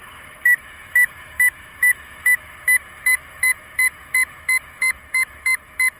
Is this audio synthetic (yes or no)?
yes